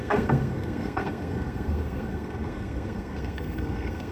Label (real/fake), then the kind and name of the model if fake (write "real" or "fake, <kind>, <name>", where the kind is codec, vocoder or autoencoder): fake, codec, SNAC